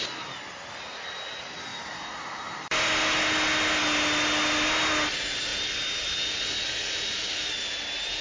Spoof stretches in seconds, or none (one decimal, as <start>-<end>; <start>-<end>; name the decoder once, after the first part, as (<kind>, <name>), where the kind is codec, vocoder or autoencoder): none